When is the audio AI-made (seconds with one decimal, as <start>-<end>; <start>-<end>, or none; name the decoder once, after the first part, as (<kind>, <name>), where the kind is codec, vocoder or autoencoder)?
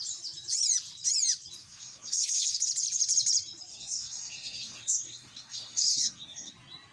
1.6-2.6 (codec, SNAC); 3.7-6.5